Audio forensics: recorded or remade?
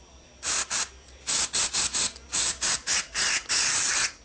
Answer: recorded